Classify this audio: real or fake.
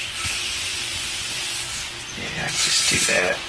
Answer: fake